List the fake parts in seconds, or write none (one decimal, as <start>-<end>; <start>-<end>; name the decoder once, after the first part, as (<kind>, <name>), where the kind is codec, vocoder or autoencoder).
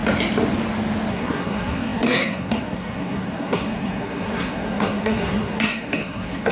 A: 1.1-6.5 (codec, SNAC)